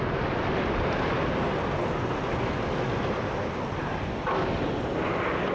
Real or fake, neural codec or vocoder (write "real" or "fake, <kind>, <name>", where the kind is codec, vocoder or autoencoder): real